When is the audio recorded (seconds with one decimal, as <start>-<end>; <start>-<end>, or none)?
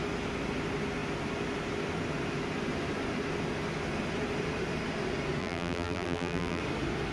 0.0-5.4; 6.6-7.1